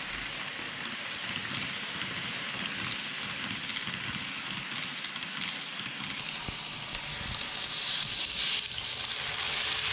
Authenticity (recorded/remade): recorded